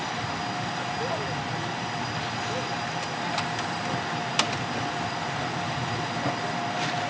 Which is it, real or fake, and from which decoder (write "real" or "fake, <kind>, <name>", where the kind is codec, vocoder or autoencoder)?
real